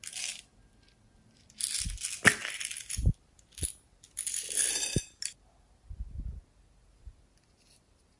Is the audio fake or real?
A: real